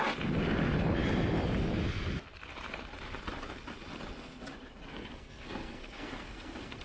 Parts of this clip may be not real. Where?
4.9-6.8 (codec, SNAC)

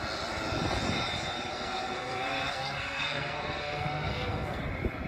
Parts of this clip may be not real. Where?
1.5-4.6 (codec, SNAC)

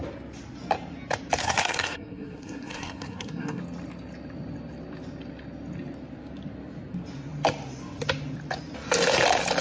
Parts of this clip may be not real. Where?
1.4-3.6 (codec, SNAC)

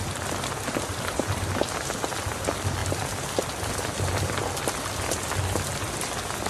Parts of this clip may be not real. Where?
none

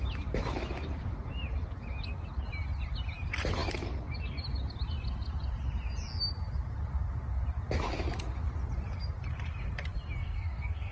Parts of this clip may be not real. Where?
10.2-10.9 (codec, SNAC)